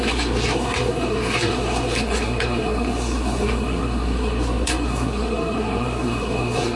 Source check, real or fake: fake